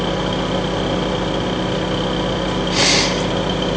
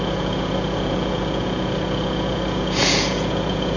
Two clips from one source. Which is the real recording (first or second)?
first